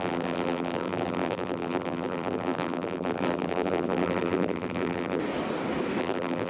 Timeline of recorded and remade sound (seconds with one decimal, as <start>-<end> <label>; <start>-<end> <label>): 0.0-5.2 remade; 5.2-6.0 recorded; 6.0-6.5 remade